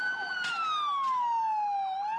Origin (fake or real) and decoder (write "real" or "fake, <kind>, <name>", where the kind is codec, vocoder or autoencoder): real